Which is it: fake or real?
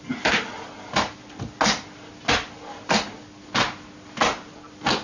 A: real